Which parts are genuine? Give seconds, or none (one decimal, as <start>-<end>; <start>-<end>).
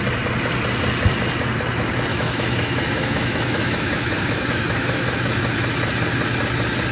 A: 0.0-2.1; 5.2-6.9